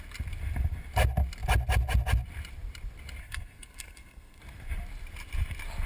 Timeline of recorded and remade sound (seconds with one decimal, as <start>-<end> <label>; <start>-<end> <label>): 0.0-3.2 recorded; 3.2-4.4 remade; 4.4-5.9 recorded